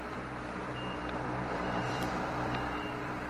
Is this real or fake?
fake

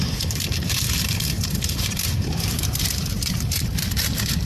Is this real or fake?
fake